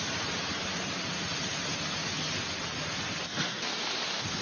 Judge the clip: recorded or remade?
recorded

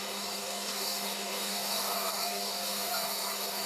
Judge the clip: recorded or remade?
remade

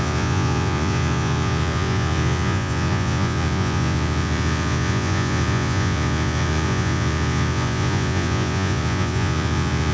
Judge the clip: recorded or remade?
remade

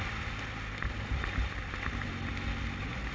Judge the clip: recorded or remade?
recorded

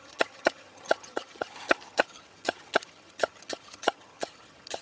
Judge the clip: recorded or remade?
remade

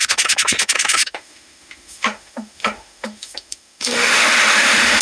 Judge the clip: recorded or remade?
remade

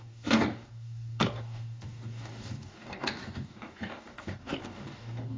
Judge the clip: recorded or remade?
remade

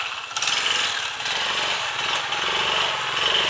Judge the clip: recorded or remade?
recorded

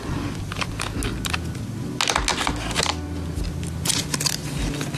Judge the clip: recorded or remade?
recorded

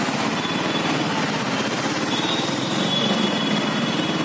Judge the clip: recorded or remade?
recorded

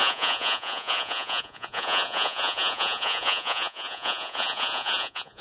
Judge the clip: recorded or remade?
remade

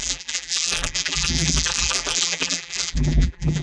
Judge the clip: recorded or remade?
remade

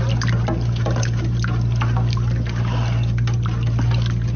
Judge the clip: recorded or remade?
recorded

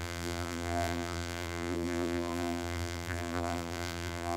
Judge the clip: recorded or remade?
remade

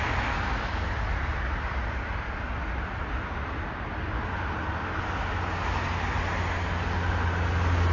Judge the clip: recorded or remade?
recorded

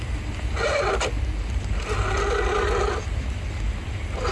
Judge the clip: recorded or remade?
recorded